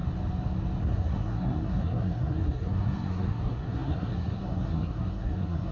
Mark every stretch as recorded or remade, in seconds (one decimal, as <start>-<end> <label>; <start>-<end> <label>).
0.0-0.8 recorded; 0.8-5.7 remade